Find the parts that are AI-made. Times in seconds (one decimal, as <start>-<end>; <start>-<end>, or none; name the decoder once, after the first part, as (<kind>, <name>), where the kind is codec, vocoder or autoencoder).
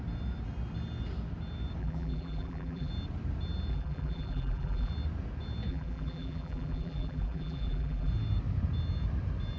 1.8-2.9 (vocoder, BigVGAN v2); 3.7-4.9; 5.7-8.1